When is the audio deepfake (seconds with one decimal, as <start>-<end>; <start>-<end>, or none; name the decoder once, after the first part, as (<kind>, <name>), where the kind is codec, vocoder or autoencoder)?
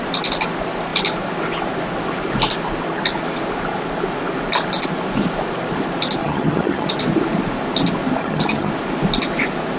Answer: 6.2-6.9 (vocoder, HiFi-GAN); 8.2-8.7